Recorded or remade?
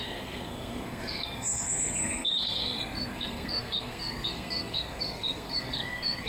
remade